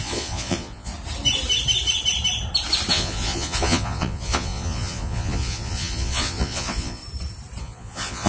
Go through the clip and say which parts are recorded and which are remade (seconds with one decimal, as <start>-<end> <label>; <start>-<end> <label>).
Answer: 0.0-0.9 remade; 0.9-2.9 recorded; 2.9-7.0 remade; 7.0-7.6 recorded; 7.6-8.3 remade